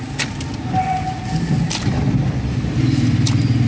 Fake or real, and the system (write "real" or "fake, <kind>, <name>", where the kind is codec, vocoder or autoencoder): real